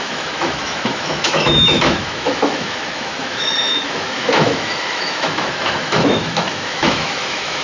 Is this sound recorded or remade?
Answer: remade